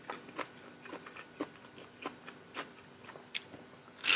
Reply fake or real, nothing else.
real